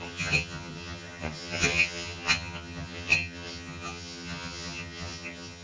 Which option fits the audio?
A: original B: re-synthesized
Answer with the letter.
B